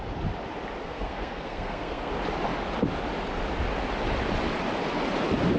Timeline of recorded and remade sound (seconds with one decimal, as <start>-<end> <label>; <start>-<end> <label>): 0.0-0.8 recorded; 0.8-2.1 remade; 2.1-5.6 recorded

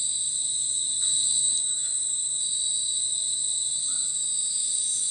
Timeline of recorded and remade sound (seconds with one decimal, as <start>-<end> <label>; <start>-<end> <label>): 0.0-1.4 recorded; 1.4-2.4 remade; 2.4-4.1 recorded; 4.1-5.1 remade

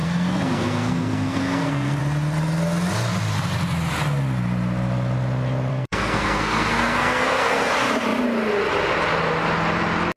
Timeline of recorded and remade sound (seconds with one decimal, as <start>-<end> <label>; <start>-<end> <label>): 0.0-2.0 remade; 2.0-5.7 recorded; 5.7-7.7 remade; 7.7-10.2 recorded

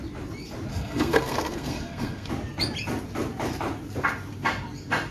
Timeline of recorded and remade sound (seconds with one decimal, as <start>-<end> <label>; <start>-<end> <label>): 0.0-0.7 recorded; 0.7-2.3 remade; 2.3-5.1 recorded

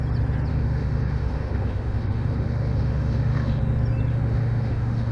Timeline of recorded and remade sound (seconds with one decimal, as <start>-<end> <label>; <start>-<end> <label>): 0.0-0.5 recorded; 0.5-3.6 remade; 3.6-4.1 recorded; 4.1-5.1 remade